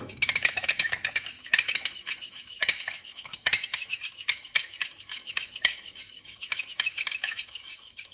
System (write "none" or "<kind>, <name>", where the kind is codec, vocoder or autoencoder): autoencoder, DAC-VAE